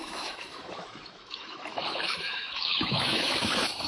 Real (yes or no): no